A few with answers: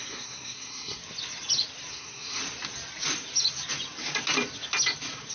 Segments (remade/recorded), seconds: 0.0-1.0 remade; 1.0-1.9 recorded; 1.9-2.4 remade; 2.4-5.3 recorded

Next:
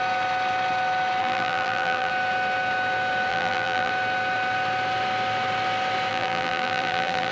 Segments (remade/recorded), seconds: 0.0-1.2 recorded; 1.2-2.1 remade; 2.1-3.3 recorded; 3.3-3.9 remade; 3.9-6.1 recorded; 6.1-7.3 remade

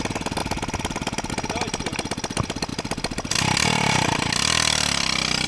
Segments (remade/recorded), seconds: 0.0-0.4 recorded; 0.4-1.3 remade; 1.3-5.5 recorded

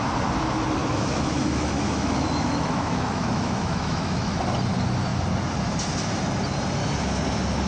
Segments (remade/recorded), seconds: 0.0-0.8 recorded; 0.8-4.4 remade; 4.4-7.7 recorded